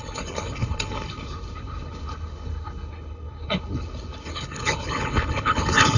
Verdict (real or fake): fake